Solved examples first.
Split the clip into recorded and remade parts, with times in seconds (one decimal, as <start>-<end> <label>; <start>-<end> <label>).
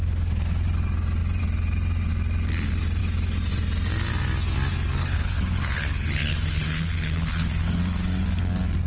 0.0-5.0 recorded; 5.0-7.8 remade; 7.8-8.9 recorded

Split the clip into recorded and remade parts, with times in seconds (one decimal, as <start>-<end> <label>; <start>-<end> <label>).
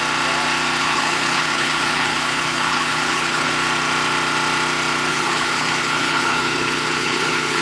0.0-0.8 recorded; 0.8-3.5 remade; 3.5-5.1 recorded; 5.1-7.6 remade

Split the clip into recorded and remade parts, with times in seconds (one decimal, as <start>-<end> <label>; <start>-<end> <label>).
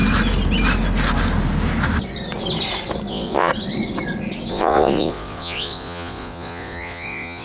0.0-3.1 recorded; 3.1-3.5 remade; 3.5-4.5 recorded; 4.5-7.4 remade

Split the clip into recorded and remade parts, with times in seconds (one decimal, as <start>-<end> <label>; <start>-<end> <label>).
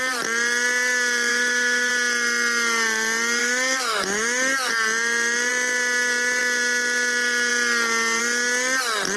0.0-1.3 recorded; 1.3-1.9 remade; 1.9-3.4 recorded; 3.4-4.7 remade; 4.7-9.2 recorded